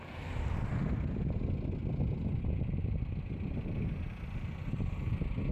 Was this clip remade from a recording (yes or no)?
no